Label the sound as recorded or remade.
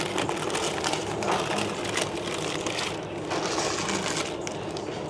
recorded